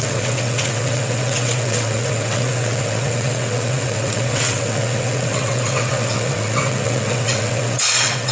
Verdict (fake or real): fake